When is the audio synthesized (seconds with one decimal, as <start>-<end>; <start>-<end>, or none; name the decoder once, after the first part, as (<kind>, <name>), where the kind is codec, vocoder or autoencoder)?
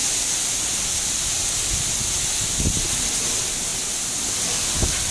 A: none